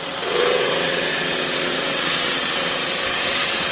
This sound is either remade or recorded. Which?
remade